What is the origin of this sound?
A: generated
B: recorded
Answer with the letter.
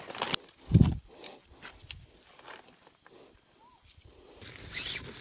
B